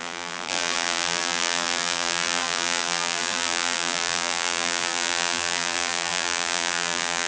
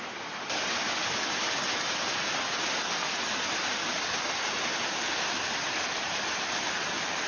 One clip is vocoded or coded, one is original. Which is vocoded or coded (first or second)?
first